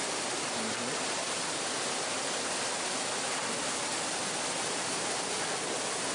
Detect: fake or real real